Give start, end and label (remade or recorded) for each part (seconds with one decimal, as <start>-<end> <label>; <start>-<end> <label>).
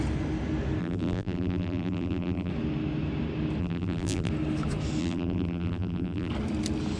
0.0-0.8 recorded; 0.8-2.5 remade; 2.5-3.6 recorded; 3.6-4.3 remade; 4.3-5.0 recorded; 5.0-6.3 remade; 6.3-7.0 recorded